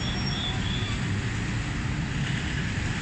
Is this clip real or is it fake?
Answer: real